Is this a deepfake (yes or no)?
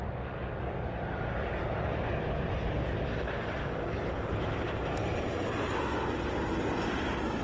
no